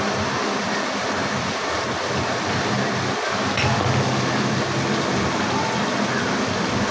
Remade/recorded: recorded